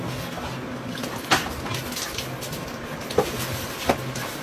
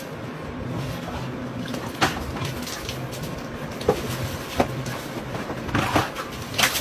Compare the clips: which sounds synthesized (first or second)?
second